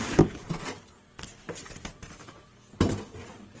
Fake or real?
real